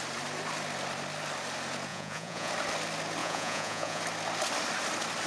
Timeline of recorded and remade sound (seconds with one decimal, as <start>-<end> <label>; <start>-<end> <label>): 0.0-1.9 recorded; 1.9-2.5 remade; 2.5-3.2 recorded; 3.2-4.0 remade; 4.0-5.3 recorded